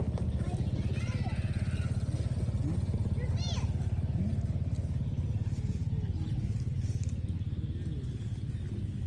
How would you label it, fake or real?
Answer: real